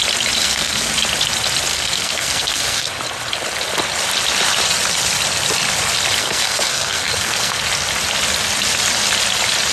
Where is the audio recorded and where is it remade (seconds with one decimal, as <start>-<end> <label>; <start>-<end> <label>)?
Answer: 0.0-0.4 recorded; 0.4-0.9 remade; 0.9-1.7 recorded; 1.7-2.9 remade; 2.9-6.2 recorded; 6.2-7.6 remade; 7.6-9.7 recorded